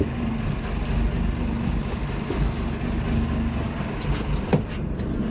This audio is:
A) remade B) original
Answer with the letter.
B